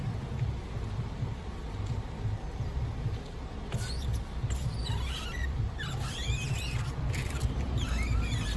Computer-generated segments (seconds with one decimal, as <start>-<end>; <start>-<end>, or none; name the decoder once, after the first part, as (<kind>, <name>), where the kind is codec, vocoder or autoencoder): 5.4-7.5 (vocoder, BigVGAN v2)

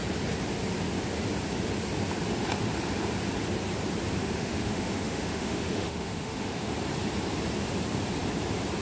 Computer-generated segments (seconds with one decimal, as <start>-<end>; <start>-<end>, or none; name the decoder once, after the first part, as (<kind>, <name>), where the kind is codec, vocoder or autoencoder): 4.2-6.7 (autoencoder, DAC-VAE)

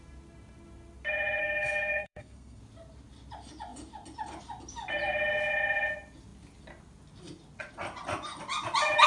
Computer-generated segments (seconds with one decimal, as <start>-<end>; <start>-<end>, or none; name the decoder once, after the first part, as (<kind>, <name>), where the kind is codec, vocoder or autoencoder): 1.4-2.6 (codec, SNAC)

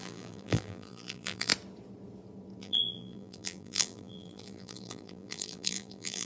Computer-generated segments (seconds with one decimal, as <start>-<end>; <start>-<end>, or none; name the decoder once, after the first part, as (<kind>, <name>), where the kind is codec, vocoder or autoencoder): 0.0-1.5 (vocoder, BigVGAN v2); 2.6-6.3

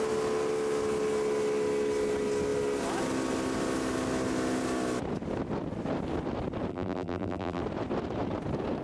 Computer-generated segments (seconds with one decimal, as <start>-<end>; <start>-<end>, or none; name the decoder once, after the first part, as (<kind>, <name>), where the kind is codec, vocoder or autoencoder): 6.7-7.6 (vocoder, BigVGAN v2)

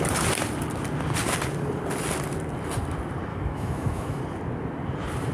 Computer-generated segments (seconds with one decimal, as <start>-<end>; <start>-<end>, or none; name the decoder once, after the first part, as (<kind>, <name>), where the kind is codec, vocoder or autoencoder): 3.3-4.2 (autoencoder, DAC-VAE)

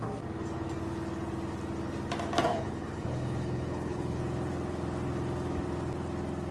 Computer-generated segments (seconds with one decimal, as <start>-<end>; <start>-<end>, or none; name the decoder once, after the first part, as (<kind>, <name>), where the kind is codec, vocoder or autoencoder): 2.5-4.2 (codec, HILCodec)

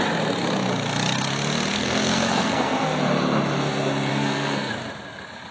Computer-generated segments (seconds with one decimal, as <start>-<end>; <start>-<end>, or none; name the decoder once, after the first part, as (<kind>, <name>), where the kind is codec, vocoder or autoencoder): 1.7-3.0 (codec, SNAC); 4.1-4.7